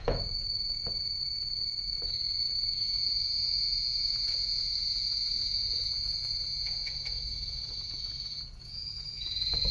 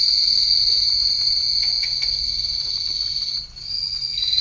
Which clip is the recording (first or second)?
second